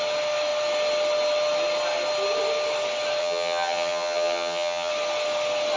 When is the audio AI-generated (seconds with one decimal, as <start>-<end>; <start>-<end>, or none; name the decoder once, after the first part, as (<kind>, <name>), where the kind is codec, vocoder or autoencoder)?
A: 3.2-4.9 (vocoder, HiFi-GAN)